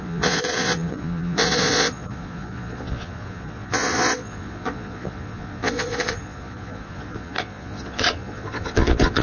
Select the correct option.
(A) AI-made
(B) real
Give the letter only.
A